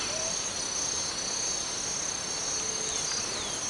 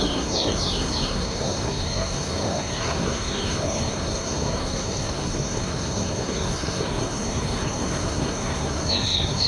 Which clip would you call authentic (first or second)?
first